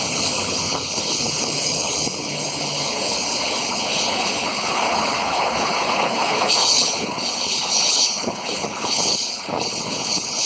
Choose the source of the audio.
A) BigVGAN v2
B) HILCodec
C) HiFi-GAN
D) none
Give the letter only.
B